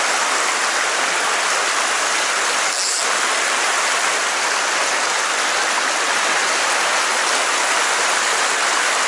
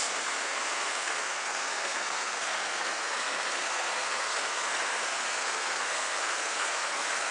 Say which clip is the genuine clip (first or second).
first